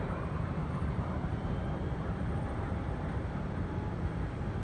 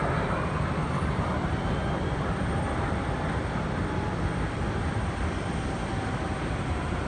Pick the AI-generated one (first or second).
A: first